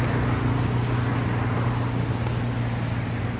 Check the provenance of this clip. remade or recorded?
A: recorded